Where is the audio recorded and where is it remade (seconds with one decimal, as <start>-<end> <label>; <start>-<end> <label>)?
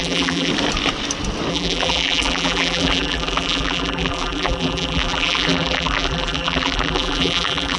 0.0-0.5 remade; 0.5-1.5 recorded; 1.5-7.8 remade